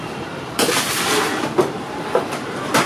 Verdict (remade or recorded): remade